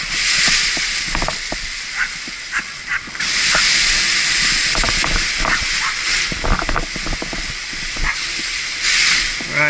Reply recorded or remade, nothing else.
recorded